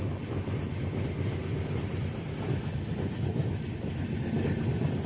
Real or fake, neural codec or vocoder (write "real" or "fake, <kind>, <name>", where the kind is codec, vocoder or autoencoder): real